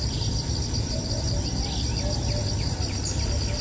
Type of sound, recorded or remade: recorded